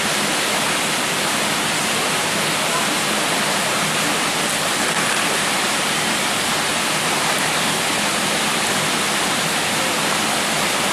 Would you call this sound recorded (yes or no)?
yes